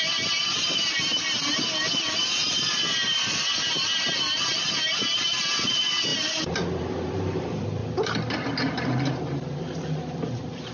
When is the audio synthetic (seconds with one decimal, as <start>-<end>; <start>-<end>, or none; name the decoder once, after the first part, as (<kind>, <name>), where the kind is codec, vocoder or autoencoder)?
0.0-7.8 (vocoder, BigVGAN v2); 8.7-10.7